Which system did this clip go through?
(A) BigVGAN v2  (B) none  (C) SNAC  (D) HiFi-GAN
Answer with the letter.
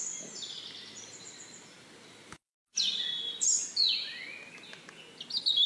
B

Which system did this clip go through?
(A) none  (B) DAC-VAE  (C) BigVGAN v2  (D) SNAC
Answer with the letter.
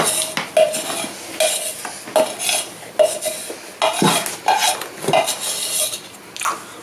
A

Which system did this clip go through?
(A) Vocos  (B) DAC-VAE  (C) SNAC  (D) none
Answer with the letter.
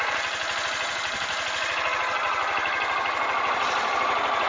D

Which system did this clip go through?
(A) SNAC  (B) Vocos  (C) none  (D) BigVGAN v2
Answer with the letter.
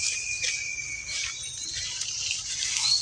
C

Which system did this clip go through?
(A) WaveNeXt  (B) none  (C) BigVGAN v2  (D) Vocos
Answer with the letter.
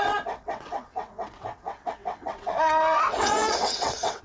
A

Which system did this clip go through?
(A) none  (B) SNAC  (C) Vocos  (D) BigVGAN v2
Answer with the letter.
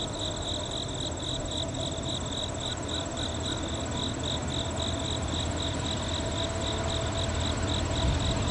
A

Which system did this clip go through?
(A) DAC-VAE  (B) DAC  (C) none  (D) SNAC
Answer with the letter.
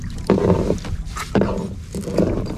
C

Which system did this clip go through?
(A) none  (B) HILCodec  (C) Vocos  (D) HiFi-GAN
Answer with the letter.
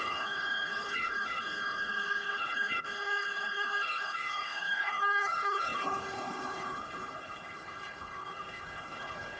B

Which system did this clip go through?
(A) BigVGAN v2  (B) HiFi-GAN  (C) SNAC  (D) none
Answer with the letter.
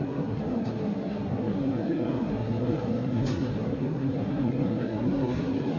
C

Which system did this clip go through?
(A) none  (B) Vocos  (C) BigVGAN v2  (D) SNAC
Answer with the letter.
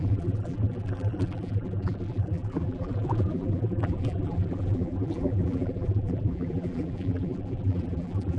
C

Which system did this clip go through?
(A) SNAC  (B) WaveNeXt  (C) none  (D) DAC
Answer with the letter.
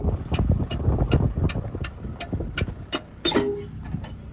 C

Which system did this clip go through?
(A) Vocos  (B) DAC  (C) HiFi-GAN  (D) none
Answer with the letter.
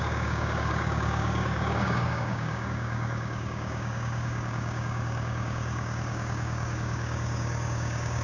B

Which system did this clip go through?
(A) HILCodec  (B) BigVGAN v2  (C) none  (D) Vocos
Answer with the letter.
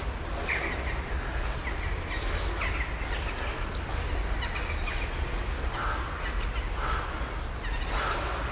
C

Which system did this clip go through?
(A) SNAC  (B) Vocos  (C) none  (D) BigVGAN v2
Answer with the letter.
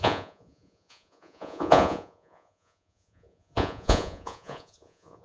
B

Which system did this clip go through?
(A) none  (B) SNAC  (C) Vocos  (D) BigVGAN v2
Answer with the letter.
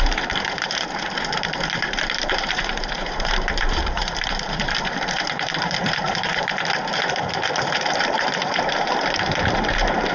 D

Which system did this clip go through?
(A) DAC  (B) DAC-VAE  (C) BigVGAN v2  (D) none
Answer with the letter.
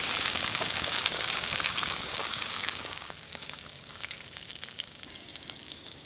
A